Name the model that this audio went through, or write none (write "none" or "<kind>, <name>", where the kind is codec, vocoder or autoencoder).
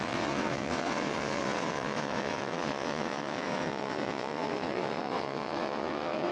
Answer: vocoder, WaveNeXt